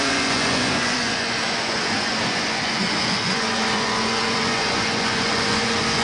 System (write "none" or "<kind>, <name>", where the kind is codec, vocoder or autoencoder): vocoder, Vocos